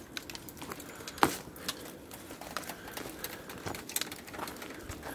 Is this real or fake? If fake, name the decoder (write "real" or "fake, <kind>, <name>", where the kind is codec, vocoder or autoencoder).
real